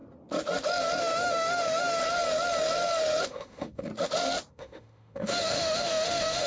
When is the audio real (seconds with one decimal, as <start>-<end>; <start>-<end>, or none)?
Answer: 0.0-1.0; 2.0-3.2; 3.9-4.5